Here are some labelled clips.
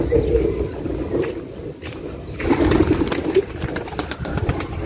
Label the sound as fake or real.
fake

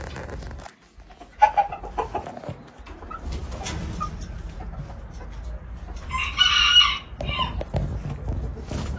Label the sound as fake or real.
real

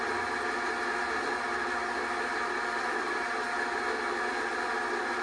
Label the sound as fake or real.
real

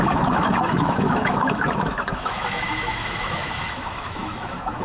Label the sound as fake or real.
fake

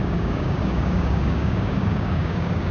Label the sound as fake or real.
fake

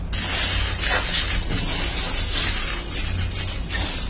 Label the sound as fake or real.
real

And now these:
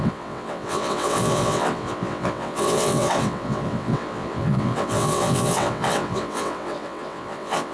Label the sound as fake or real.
fake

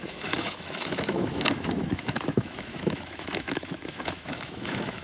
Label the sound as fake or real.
fake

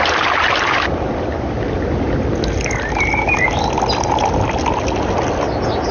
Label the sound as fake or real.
real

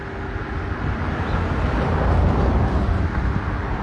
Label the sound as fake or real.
real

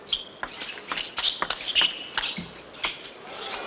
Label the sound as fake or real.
real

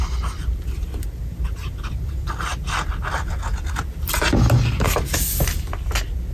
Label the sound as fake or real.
real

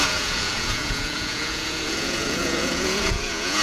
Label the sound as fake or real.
fake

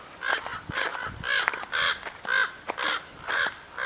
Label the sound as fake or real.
real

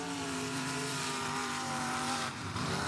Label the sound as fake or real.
fake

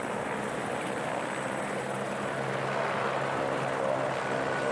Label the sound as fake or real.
real